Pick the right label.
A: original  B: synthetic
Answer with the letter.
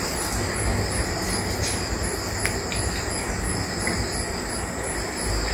A